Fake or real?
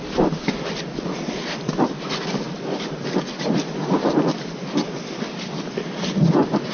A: fake